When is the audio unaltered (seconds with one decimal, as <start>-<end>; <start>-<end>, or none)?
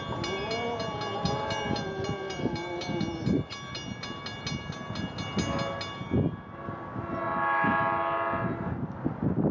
0.0-9.5